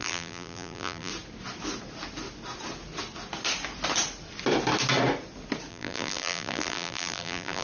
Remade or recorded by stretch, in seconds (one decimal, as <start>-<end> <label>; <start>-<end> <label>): 0.0-1.1 remade; 1.1-5.7 recorded; 5.7-7.6 remade